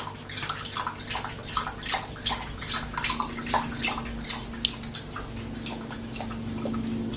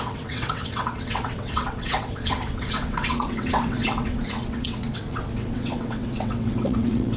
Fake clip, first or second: second